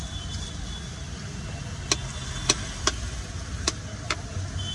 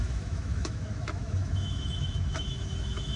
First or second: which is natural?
first